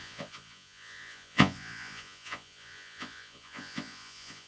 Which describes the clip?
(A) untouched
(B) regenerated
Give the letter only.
B